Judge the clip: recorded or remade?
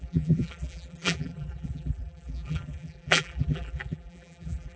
remade